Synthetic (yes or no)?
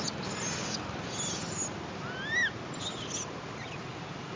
no